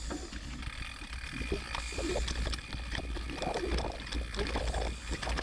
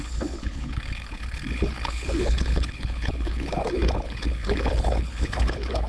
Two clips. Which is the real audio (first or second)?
first